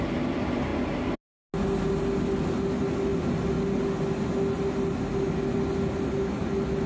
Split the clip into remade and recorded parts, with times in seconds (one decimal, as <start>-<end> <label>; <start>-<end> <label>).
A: 0.0-6.9 recorded